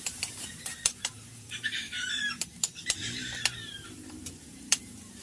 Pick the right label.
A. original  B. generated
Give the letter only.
B